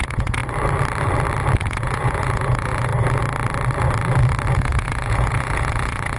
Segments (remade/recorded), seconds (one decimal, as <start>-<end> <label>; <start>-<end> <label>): 0.0-0.4 remade; 0.4-1.6 recorded; 1.6-2.9 remade; 2.9-4.5 recorded; 4.5-6.2 remade